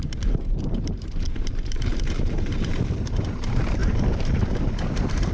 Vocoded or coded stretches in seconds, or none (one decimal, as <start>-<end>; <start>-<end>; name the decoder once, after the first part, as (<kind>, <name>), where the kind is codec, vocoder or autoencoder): 0.0-5.3 (vocoder, BigVGAN v2)